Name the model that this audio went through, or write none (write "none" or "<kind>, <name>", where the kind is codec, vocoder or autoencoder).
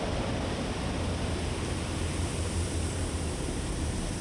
vocoder, BigVGAN v2